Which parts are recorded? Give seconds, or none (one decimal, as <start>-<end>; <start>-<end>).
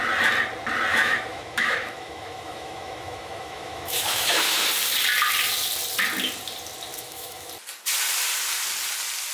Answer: 0.0-0.9; 4.7-6.9; 7.5-9.3